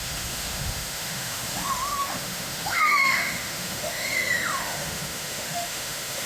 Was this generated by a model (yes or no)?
yes